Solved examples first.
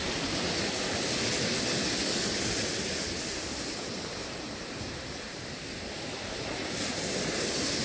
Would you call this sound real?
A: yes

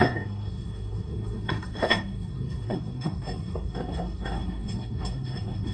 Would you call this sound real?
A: no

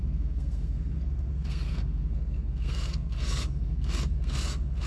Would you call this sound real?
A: no